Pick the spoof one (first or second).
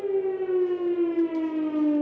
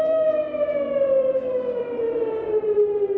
second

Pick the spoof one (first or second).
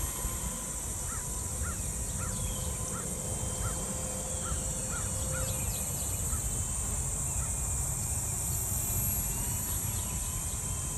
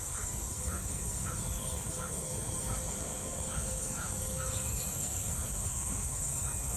second